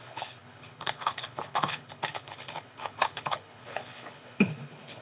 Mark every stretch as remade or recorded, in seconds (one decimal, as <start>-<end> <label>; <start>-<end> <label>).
0.0-5.0 remade